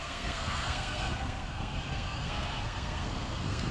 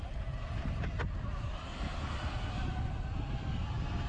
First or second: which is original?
second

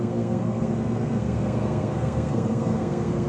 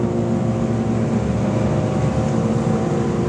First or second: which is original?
second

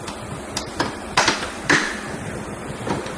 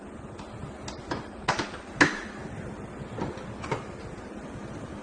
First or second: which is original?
second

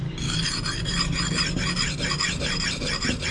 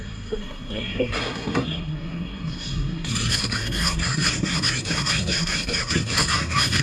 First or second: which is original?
first